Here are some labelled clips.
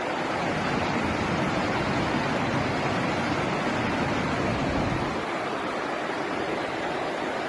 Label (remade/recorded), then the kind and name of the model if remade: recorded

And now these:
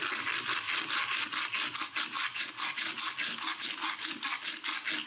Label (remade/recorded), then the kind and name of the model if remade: recorded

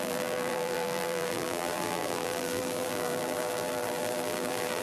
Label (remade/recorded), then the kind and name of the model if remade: remade, vocoder, BigVGAN v2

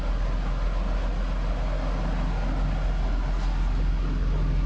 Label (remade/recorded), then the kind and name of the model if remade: recorded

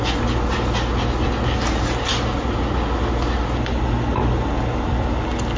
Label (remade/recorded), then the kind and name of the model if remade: recorded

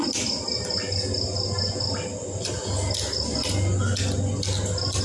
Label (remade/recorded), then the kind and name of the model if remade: recorded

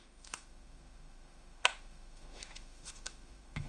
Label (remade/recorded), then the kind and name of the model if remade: remade, autoencoder, DAC-VAE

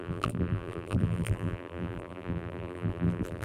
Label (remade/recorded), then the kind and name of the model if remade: remade, vocoder, BigVGAN v2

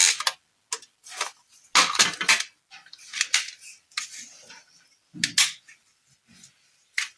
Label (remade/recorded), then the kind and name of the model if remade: recorded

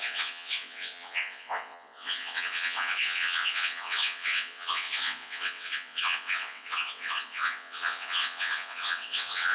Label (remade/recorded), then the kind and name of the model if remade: remade, vocoder, WaveNeXt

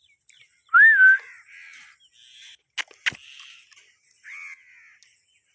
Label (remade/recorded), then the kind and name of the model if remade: recorded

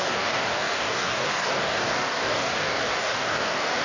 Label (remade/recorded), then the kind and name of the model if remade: remade, codec, DAC